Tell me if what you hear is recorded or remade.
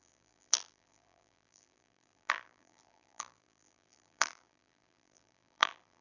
remade